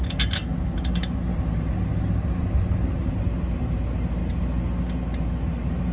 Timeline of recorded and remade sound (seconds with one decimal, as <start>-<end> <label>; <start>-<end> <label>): 0.0-1.3 recorded; 1.3-1.9 remade; 1.9-5.9 recorded

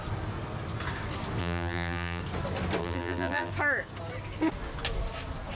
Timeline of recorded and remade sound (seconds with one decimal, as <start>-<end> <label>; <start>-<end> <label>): 0.0-1.4 recorded; 1.4-2.2 remade; 2.2-2.8 recorded; 2.8-3.5 remade; 3.5-5.5 recorded

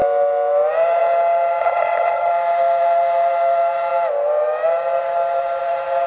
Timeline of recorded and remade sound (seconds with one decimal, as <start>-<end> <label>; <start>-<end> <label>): 0.0-1.6 recorded; 1.6-2.3 remade; 2.3-6.1 recorded

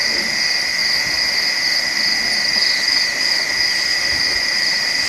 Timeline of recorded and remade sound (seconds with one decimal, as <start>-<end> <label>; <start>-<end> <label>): 0.0-3.9 recorded; 3.9-5.1 remade